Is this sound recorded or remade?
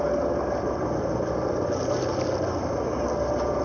recorded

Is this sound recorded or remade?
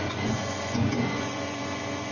remade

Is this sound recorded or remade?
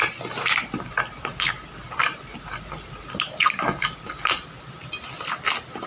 recorded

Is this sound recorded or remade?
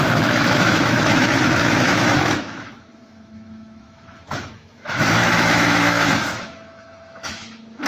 remade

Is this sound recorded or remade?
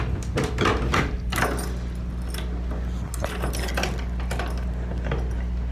recorded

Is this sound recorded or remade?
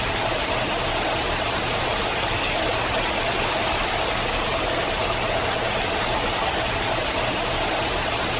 recorded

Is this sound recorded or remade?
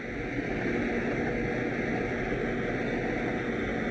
recorded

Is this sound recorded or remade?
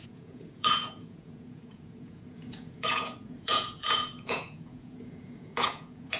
remade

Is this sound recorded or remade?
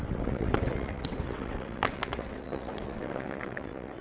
remade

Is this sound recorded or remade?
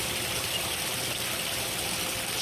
recorded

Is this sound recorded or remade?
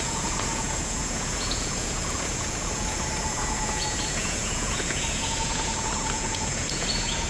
remade